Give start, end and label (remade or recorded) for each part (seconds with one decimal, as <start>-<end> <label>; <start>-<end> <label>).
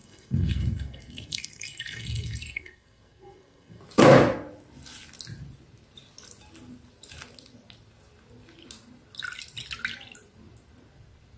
0.0-3.8 remade; 3.8-11.4 recorded